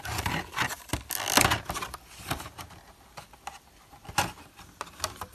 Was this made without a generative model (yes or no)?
yes